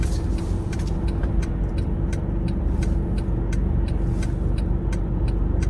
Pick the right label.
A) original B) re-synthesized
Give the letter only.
A